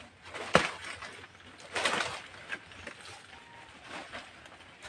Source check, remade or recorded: recorded